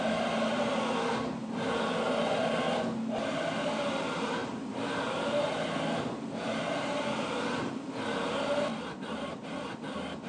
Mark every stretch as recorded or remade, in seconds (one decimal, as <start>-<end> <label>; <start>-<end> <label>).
0.0-4.4 recorded; 4.4-7.7 remade; 7.7-10.3 recorded

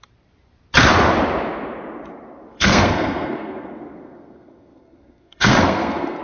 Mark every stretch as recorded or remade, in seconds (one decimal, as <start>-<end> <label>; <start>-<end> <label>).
0.0-2.5 recorded; 2.5-6.2 remade

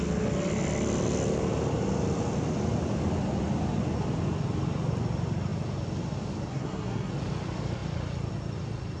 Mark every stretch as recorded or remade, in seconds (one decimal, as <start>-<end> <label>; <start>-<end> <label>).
0.0-6.5 recorded; 6.5-7.1 remade; 7.1-9.0 recorded

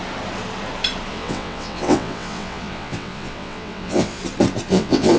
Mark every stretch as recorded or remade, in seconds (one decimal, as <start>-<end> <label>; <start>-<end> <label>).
0.0-1.1 recorded; 1.1-4.2 remade; 4.2-4.7 recorded; 4.7-5.2 remade

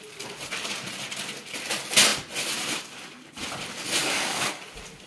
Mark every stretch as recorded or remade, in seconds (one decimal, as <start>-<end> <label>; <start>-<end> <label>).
0.0-4.0 recorded; 4.0-4.6 remade; 4.6-5.1 recorded

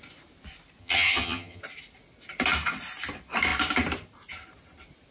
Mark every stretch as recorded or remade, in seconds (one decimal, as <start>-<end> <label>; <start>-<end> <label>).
0.0-0.8 recorded; 0.8-1.6 remade; 1.6-5.1 recorded

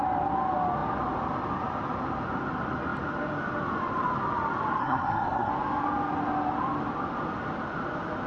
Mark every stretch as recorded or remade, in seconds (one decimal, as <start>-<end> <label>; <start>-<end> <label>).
0.0-4.8 recorded; 4.8-5.5 remade; 5.5-8.3 recorded

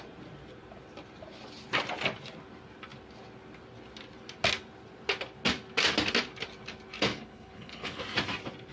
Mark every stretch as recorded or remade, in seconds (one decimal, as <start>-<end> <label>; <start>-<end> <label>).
0.0-7.1 recorded; 7.1-8.0 remade; 8.0-8.7 recorded